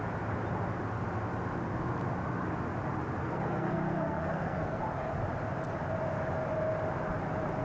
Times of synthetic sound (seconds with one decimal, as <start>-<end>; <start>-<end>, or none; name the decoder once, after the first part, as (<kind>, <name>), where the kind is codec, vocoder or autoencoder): 3.2-4.8 (codec, SNAC)